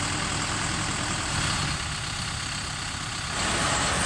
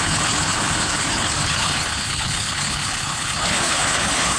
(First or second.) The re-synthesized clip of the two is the second